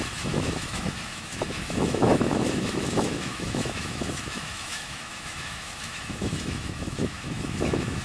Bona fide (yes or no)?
no